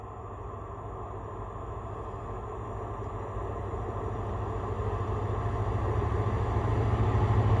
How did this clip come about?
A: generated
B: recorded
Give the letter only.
B